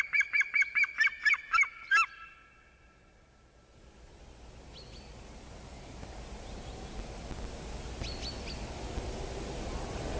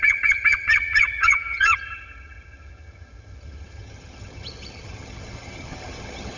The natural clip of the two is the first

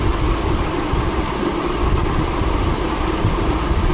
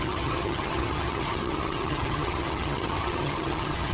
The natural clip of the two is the first